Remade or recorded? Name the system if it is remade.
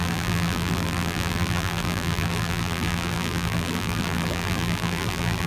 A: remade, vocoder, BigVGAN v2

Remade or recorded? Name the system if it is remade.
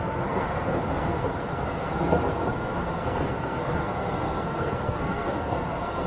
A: remade, codec, SNAC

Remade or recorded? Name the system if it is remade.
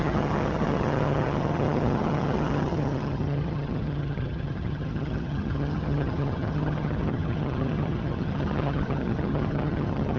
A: remade, vocoder, HiFi-GAN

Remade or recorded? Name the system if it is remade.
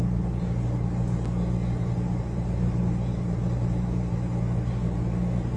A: recorded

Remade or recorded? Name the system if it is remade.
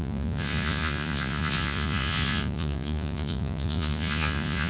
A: remade, vocoder, Vocos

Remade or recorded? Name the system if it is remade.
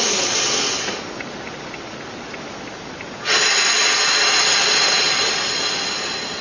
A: recorded